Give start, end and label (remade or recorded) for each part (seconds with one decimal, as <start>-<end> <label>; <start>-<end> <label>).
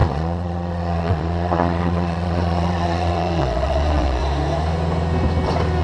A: 0.0-4.2 remade; 4.2-5.8 recorded